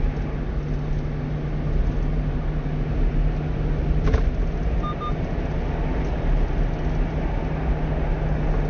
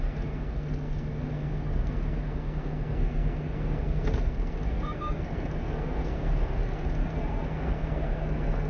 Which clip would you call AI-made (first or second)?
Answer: second